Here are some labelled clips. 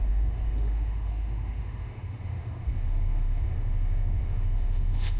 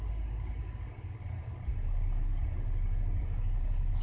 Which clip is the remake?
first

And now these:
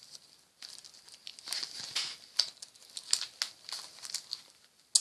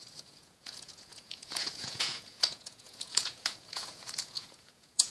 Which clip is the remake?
second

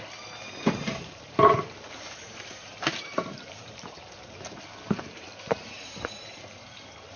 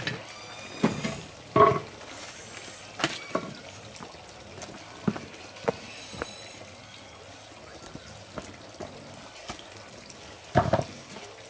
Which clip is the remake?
first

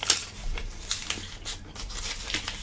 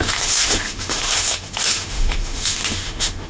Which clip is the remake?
second